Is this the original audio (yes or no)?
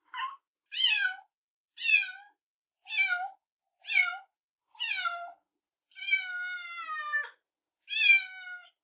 yes